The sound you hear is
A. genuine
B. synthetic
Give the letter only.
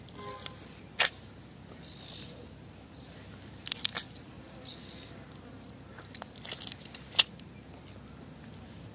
A